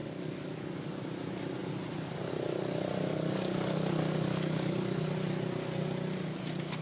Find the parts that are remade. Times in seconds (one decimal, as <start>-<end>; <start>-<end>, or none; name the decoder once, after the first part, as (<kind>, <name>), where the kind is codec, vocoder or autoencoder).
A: 0.0-0.9 (codec, DAC); 3.1-5.1